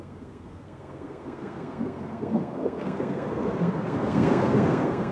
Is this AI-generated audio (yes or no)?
yes